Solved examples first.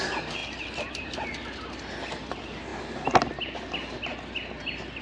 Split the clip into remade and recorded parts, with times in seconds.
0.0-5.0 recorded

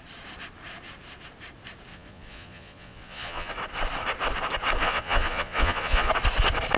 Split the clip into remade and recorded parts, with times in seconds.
0.0-1.9 recorded; 1.9-3.5 remade; 3.5-4.8 recorded; 4.8-6.1 remade; 6.1-6.8 recorded

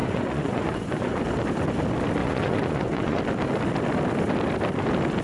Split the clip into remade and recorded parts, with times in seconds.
0.0-1.2 remade; 1.2-2.2 recorded; 2.2-3.2 remade; 3.2-5.2 recorded

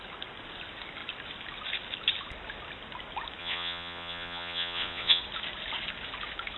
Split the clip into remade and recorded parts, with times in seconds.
0.0-3.4 recorded; 3.4-5.2 remade; 5.2-6.6 recorded

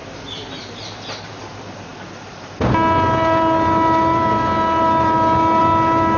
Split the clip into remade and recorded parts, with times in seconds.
0.0-6.2 recorded

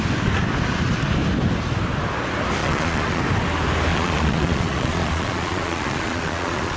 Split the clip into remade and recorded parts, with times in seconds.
0.0-2.6 recorded; 2.6-3.2 remade; 3.2-3.9 recorded; 3.9-6.8 remade

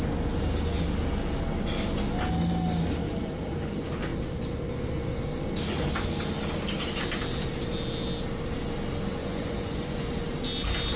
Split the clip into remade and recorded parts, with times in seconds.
0.0-9.2 recorded; 9.2-10.1 remade; 10.1-11.0 recorded

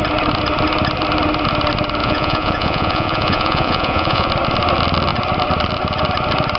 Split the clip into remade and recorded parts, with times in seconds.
0.0-2.0 recorded; 2.0-4.3 remade; 4.3-6.6 recorded